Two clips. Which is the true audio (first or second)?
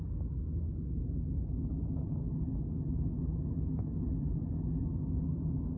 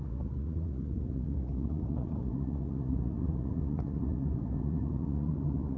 first